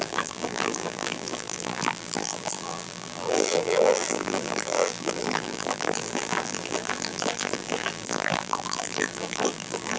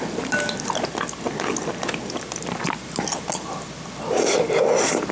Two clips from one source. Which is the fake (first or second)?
first